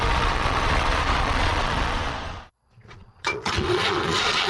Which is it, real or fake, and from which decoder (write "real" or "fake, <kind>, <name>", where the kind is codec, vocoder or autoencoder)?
fake, vocoder, Vocos